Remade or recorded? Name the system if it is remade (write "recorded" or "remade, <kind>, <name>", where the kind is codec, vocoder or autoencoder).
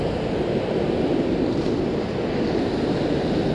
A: recorded